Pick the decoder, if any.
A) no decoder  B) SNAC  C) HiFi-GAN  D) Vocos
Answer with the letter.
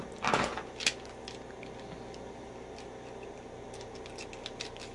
A